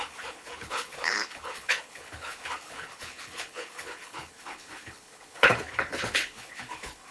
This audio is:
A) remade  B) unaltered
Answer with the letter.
A